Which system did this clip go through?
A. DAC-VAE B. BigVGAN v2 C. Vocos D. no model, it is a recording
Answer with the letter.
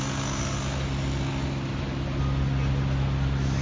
D